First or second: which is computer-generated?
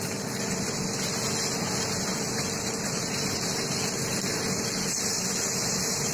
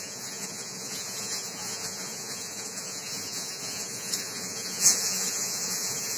second